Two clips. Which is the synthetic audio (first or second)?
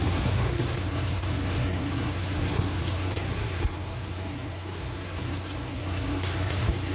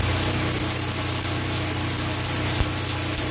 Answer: first